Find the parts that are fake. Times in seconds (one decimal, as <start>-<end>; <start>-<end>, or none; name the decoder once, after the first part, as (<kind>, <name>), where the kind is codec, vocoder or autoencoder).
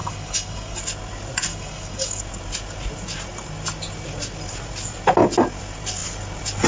0.0-0.8 (codec, DAC); 1.5-2.2